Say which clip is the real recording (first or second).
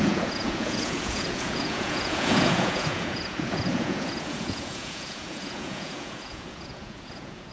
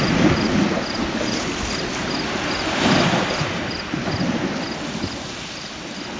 second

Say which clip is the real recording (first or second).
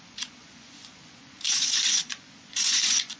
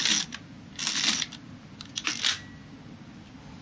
second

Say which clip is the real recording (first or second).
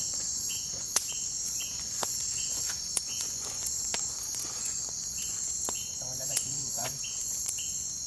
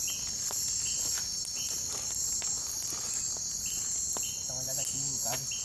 second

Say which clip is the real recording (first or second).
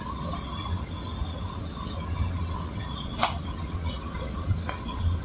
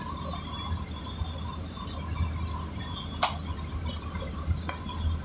second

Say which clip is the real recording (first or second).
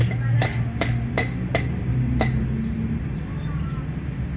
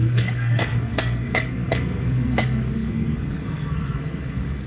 first